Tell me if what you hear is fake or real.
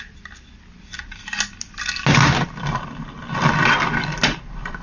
real